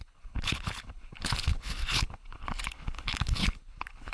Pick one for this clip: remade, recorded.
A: remade